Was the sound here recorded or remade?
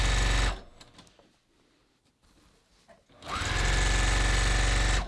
recorded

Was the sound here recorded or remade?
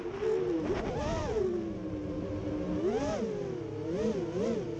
recorded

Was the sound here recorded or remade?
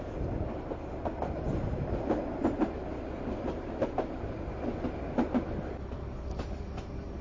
recorded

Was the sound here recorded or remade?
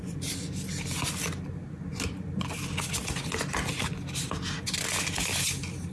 recorded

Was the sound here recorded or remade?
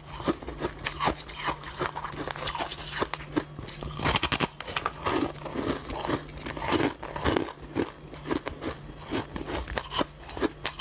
recorded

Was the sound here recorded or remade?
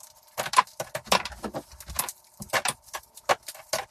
recorded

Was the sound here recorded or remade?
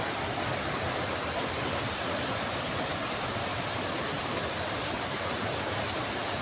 recorded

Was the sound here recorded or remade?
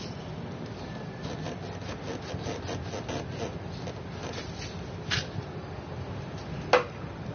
recorded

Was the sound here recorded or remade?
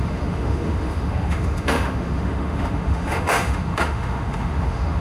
remade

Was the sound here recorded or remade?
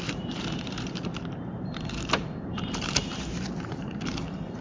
remade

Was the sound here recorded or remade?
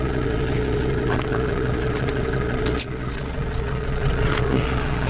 remade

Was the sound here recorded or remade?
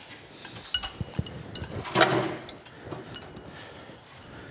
recorded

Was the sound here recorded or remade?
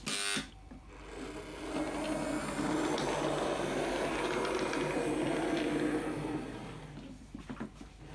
recorded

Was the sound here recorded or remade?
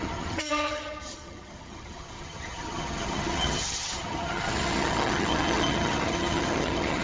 remade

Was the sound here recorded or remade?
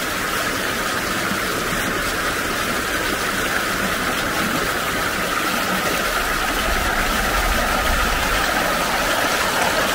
recorded